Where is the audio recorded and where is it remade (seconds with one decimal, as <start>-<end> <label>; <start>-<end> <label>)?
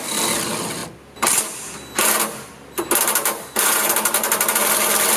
0.0-5.2 recorded